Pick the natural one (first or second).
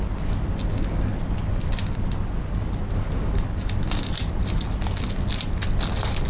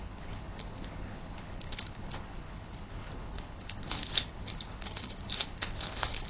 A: first